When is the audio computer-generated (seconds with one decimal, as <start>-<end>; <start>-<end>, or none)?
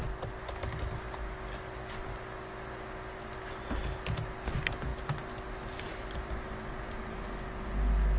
none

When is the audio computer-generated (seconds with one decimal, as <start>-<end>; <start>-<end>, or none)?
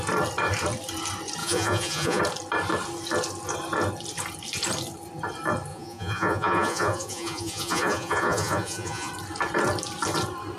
1.4-2.2; 5.7-9.1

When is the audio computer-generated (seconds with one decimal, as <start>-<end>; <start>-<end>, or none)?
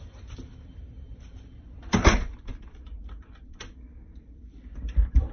0.0-5.3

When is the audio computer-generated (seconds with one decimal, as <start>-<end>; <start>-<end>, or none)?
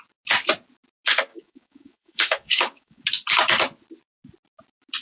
1.3-3.0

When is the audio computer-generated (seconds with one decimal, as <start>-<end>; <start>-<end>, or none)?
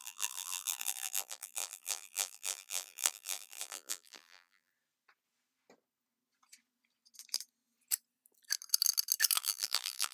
0.0-4.7; 9.4-10.1